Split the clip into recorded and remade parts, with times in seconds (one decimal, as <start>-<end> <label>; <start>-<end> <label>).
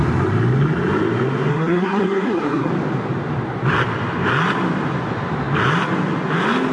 0.0-1.5 recorded; 1.5-2.7 remade; 2.7-6.7 recorded